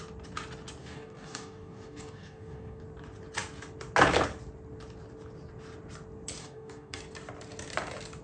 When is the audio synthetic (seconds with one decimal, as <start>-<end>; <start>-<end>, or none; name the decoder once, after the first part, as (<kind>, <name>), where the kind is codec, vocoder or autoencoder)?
0.8-2.8 (codec, DAC); 6.4-7.0